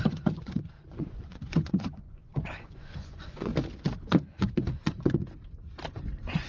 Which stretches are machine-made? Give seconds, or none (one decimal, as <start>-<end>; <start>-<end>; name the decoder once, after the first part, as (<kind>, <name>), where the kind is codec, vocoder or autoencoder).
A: 0.0-3.5 (vocoder, Vocos); 4.1-5.2; 5.9-6.5